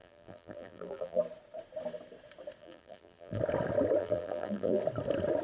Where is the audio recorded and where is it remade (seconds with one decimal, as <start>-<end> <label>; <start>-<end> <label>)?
0.0-1.2 remade; 1.2-2.6 recorded; 2.6-3.4 remade; 3.4-4.0 recorded; 4.0-4.8 remade; 4.8-5.4 recorded